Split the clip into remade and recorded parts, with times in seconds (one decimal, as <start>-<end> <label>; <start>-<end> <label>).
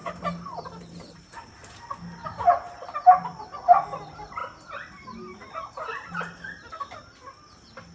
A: 0.0-1.7 remade; 1.7-7.9 recorded